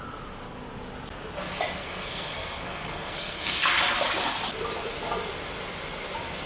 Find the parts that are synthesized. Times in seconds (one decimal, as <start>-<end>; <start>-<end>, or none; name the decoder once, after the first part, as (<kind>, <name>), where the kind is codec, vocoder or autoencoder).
1.8-3.6 (codec, SNAC)